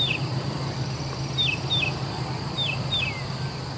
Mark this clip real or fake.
real